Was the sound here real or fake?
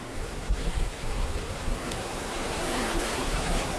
fake